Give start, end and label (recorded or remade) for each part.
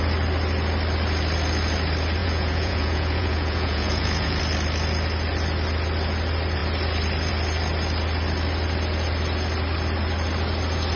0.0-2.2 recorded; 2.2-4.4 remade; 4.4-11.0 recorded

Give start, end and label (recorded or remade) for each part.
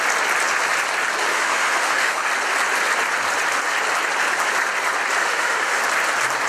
0.0-1.2 recorded; 1.2-2.3 remade; 2.3-5.2 recorded; 5.2-5.8 remade; 5.8-6.5 recorded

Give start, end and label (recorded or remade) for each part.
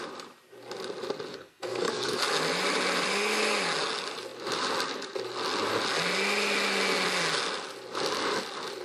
0.0-1.3 recorded; 1.3-2.2 remade; 2.2-8.8 recorded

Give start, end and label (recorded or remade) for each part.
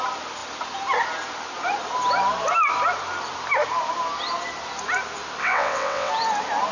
0.0-5.4 recorded; 5.4-6.1 remade; 6.1-6.7 recorded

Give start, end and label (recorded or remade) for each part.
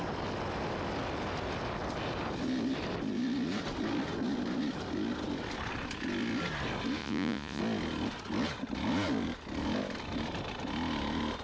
0.0-7.0 recorded; 7.0-7.6 remade; 7.6-11.4 recorded